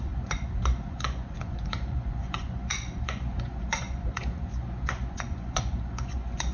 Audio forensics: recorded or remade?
remade